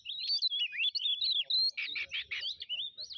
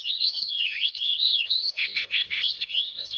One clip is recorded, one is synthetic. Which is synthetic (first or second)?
second